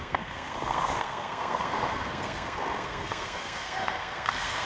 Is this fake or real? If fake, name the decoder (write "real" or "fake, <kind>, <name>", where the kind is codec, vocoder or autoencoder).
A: fake, codec, SNAC